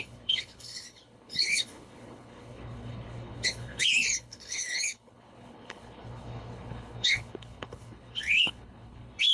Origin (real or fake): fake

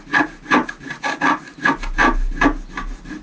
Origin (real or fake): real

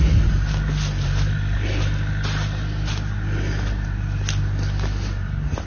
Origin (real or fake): real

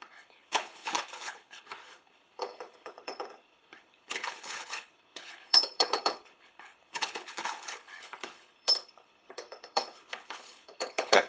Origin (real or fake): fake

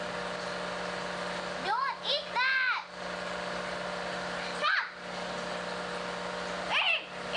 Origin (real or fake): real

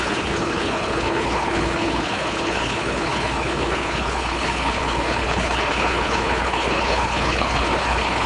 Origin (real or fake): fake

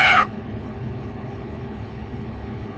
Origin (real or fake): fake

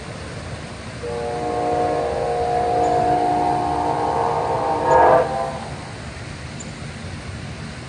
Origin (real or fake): real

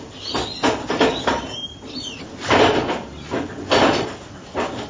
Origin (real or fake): real